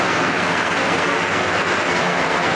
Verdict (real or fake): fake